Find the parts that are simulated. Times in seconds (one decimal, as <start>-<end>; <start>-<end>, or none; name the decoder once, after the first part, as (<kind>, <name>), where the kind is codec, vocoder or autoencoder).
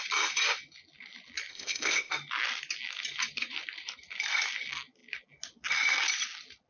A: 1.5-2.1 (codec, ZipCodec)